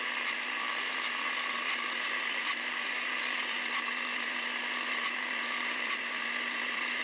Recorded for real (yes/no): no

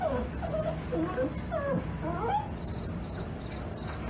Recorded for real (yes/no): yes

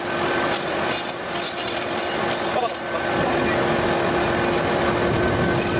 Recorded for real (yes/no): yes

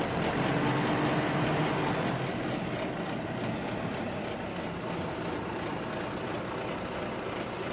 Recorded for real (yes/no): yes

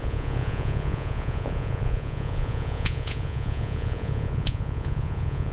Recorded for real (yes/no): no